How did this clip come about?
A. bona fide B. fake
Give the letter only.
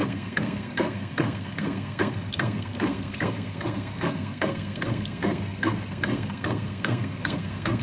B